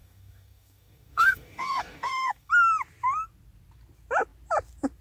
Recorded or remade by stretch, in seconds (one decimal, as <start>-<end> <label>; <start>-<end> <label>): 0.0-2.5 remade; 2.5-5.0 recorded